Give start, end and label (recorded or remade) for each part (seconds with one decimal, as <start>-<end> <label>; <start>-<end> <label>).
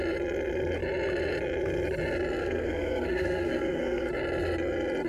0.0-2.4 recorded; 2.4-4.1 remade; 4.1-5.1 recorded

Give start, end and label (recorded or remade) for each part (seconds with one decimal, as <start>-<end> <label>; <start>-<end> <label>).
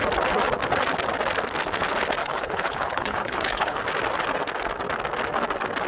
0.0-2.2 recorded; 2.2-3.8 remade; 3.8-5.9 recorded